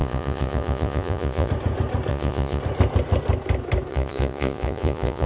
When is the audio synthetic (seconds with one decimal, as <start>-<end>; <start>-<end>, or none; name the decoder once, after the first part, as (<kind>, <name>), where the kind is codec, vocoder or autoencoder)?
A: 0.0-1.5 (vocoder, Vocos); 2.1-2.6; 3.9-5.3